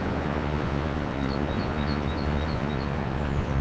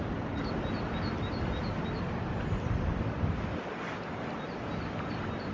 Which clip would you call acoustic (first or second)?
second